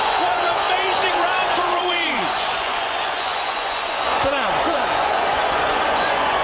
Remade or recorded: remade